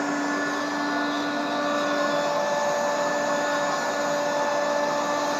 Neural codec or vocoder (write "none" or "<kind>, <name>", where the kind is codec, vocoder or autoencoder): none